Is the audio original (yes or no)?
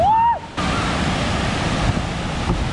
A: yes